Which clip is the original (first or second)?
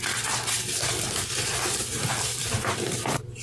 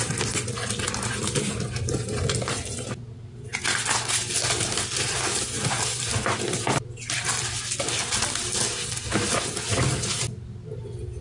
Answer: second